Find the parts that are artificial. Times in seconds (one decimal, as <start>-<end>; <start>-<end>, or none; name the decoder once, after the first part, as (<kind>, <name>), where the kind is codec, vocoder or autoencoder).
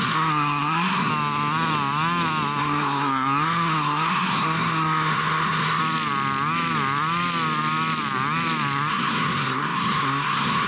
0.0-1.1 (codec, SNAC); 2.6-5.8; 8.9-10.7